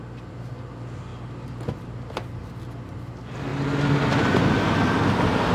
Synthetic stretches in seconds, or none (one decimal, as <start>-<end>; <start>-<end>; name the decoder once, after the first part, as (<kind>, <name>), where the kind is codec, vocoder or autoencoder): 1.1-1.7 (vocoder, BigVGAN v2); 3.5-4.5